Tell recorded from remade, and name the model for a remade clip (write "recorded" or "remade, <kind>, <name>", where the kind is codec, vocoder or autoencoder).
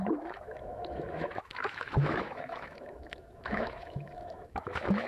remade, autoencoder, DAC-VAE